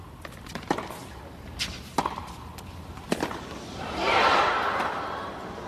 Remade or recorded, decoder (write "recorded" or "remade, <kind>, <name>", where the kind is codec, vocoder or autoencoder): remade, vocoder, BigVGAN v2